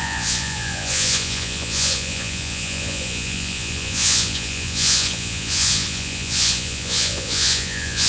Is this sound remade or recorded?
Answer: remade